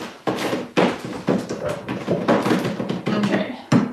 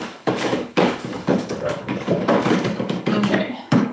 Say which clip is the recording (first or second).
first